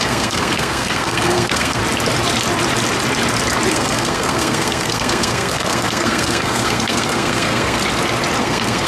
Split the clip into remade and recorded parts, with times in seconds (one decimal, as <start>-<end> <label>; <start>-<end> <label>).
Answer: 0.0-1.8 remade; 1.8-3.7 recorded; 3.7-7.8 remade; 7.8-8.4 recorded; 8.4-8.9 remade